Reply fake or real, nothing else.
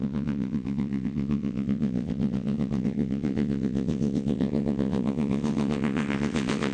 fake